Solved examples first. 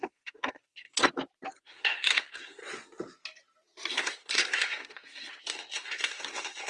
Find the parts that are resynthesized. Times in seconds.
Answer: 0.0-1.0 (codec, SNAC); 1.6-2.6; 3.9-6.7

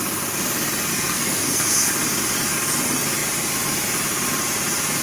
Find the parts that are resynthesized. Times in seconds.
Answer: 0.9-1.9 (codec, SNAC)

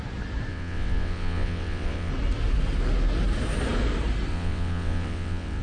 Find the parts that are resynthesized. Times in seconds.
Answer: 0.5-2.1 (vocoder, WaveNeXt); 4.3-5.6

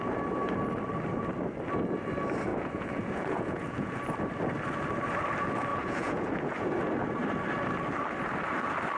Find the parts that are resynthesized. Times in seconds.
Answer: 2.5-4.0 (vocoder, Vocos); 5.7-6.7